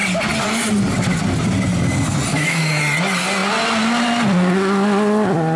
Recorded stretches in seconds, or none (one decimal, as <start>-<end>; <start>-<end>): 0.0-2.3; 2.8-5.6